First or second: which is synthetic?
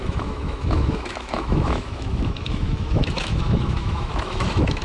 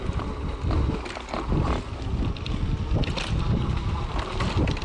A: first